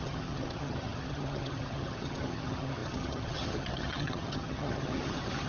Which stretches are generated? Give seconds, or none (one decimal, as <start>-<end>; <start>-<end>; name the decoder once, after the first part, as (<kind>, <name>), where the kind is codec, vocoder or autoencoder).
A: 0.0-5.5 (vocoder, HiFi-GAN)